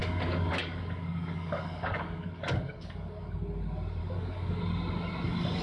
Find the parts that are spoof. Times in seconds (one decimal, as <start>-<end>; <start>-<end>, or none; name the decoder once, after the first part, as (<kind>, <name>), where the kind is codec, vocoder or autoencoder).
0.0-3.4 (codec, DAC); 4.0-4.6